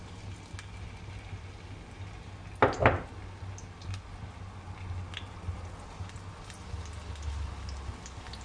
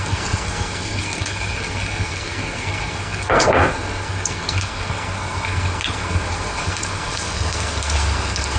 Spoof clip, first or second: second